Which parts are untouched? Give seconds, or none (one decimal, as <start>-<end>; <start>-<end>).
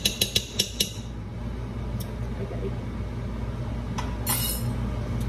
0.0-5.3